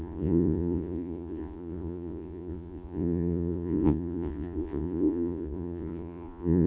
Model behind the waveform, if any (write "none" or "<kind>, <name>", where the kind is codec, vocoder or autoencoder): vocoder, Vocos